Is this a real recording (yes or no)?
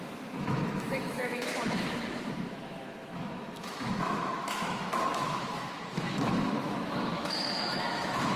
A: no